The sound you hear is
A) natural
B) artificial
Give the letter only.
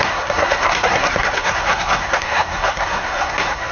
B